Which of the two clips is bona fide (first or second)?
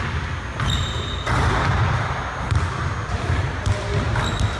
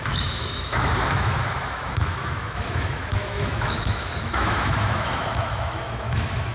first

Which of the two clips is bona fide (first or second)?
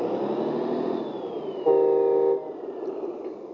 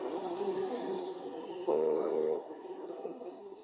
first